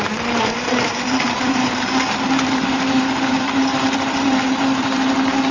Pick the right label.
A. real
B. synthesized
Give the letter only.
A